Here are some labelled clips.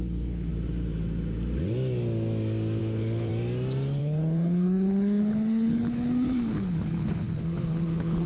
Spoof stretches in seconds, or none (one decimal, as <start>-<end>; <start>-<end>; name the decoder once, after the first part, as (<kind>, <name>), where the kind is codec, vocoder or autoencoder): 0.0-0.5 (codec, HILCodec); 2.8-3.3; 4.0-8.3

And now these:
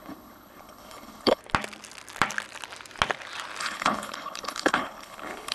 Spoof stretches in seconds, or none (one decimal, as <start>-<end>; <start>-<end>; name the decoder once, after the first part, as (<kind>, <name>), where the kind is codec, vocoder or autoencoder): 0.0-1.4 (codec, HILCodec); 3.6-5.5

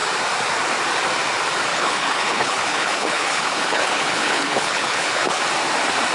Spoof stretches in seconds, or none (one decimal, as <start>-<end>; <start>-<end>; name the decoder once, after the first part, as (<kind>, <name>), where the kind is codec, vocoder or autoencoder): 1.7-5.4 (codec, HILCodec)

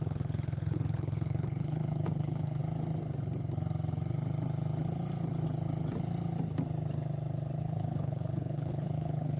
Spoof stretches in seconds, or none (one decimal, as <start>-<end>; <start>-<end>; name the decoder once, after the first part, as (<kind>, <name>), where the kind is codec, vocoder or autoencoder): 0.0-2.6 (codec, HILCodec); 7.6-9.4

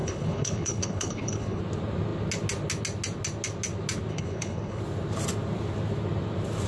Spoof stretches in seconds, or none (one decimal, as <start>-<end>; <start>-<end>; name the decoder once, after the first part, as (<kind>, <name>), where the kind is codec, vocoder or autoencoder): 0.0-1.6 (codec, HILCodec); 4.1-4.8

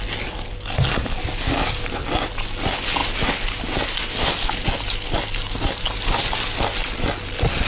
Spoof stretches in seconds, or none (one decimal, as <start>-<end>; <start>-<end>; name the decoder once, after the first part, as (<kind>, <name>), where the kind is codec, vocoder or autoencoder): none

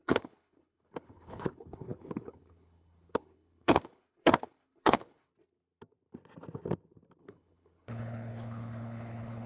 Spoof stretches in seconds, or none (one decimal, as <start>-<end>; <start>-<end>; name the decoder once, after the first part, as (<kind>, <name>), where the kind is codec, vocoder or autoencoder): 0.0-5.3 (codec, HILCodec); 7.2-9.5

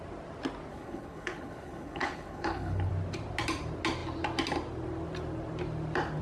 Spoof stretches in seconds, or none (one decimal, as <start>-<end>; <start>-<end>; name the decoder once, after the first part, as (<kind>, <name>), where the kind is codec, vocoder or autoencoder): 0.7-2.9 (codec, HILCodec)